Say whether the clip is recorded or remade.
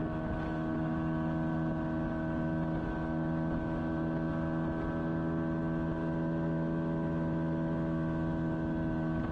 recorded